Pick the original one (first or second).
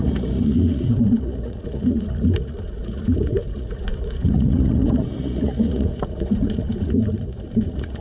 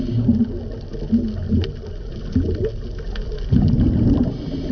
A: second